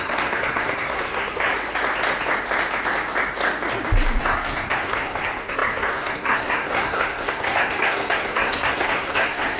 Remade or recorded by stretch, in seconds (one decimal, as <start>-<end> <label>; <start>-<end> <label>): 0.0-1.5 remade; 1.5-4.2 recorded; 4.2-9.6 remade